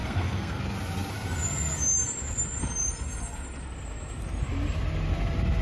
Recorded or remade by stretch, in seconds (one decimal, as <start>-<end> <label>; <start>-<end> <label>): 0.0-0.6 remade; 0.6-5.6 recorded